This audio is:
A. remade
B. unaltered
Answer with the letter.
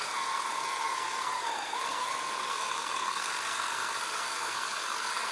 A